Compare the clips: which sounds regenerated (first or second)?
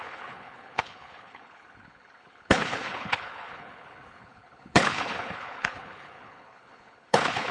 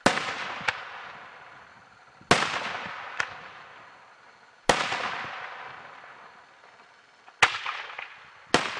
first